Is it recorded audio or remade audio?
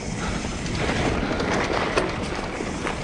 remade